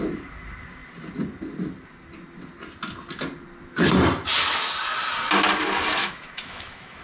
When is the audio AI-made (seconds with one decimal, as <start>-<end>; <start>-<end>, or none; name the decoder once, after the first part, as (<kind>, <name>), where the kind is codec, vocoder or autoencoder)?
6.0-7.0 (autoencoder, DAC-VAE)